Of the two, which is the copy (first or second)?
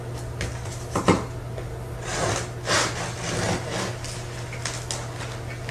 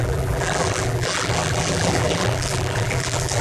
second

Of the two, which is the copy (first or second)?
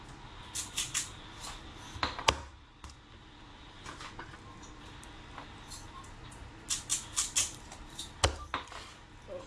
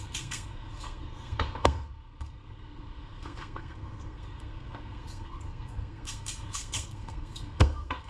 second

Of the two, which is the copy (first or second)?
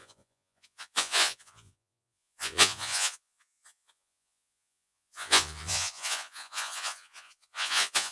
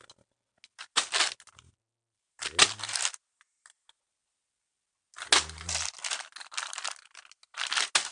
first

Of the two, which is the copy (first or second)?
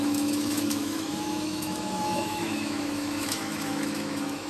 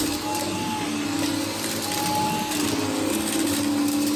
first